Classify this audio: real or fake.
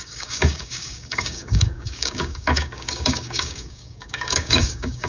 fake